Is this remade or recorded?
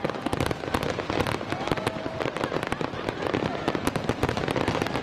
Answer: recorded